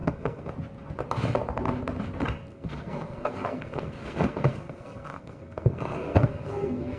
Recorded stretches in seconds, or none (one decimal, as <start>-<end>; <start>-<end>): 0.5-2.5